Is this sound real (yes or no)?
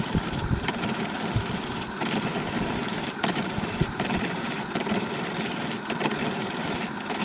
no